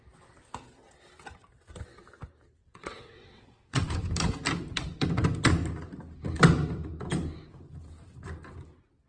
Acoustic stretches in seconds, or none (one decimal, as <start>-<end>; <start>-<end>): 0.0-2.6; 3.9-9.1